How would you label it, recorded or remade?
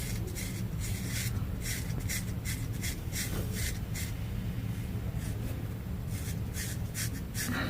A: recorded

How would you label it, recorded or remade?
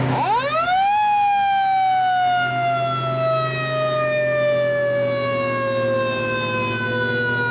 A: recorded